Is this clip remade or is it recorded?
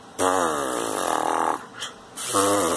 recorded